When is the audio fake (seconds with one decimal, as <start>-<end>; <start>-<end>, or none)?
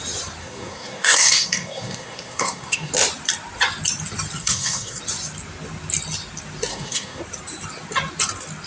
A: 0.4-2.9; 4.4-5.0; 6.7-7.2